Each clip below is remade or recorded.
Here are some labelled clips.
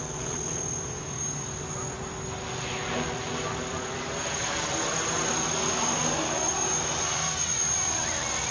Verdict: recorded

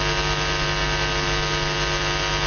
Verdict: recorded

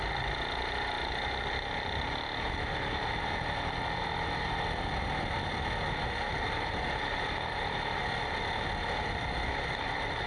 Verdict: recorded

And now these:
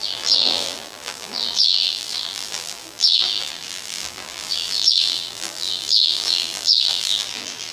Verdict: remade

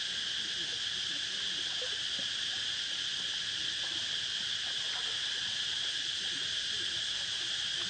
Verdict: recorded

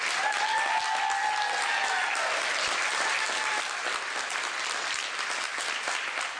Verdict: recorded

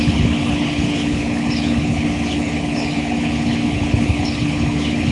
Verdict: remade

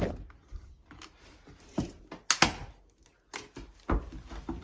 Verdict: recorded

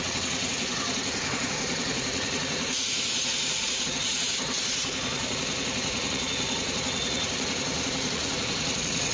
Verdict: remade